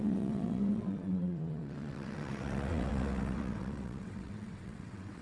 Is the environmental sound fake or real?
fake